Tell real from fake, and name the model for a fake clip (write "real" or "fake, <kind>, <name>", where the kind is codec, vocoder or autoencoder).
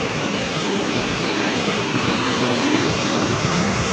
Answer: fake, codec, SNAC